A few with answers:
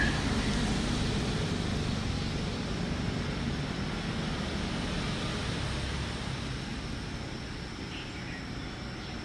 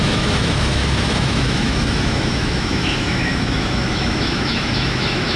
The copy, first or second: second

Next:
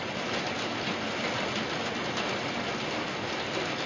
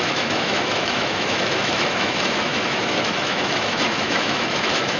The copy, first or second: second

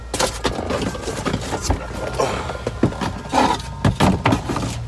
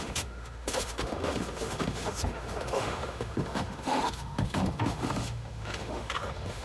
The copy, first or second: second